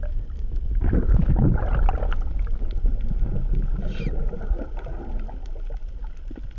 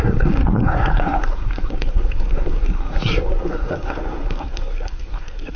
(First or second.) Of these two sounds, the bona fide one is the first